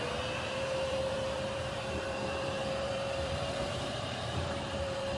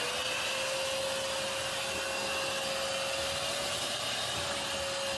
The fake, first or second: first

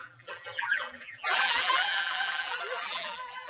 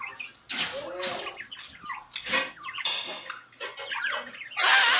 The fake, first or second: first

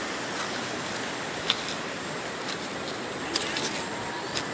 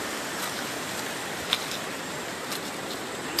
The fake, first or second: second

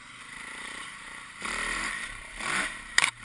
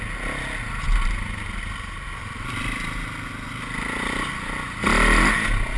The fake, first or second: first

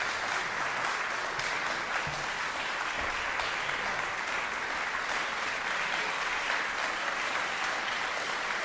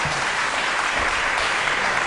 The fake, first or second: second